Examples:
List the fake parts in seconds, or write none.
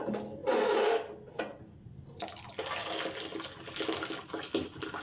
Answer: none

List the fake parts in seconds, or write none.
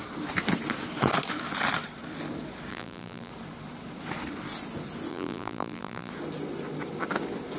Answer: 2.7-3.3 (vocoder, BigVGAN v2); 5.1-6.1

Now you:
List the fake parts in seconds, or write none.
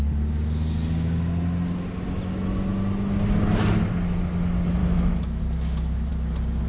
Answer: 4.8-5.4 (autoencoder, DAC-VAE)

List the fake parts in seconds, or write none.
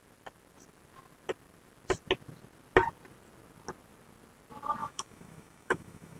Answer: 4.8-6.2 (autoencoder, DAC-VAE)